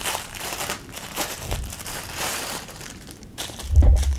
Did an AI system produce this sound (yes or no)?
yes